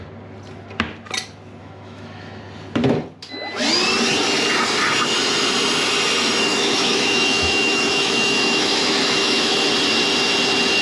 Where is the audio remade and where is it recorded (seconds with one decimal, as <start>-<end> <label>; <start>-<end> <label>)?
0.0-1.6 recorded; 1.6-2.4 remade; 2.4-6.5 recorded; 6.5-9.7 remade; 9.7-10.8 recorded